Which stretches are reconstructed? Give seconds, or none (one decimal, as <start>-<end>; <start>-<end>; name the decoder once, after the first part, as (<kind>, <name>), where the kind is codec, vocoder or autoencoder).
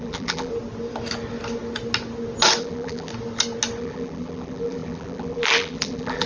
0.0-0.5 (vocoder, BigVGAN v2); 2.6-3.1; 3.8-6.3